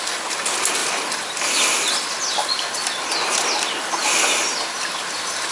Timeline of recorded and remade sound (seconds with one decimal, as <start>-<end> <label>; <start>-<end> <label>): 0.0-0.8 recorded; 0.8-1.9 remade; 1.9-5.5 recorded